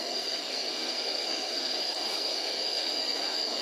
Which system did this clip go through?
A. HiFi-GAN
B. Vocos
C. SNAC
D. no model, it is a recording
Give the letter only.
C